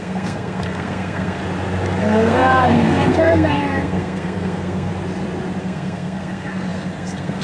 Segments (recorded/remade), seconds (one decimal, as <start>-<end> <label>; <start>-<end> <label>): 0.0-1.4 remade; 1.4-2.0 recorded; 2.0-4.9 remade; 4.9-5.6 recorded; 5.6-7.4 remade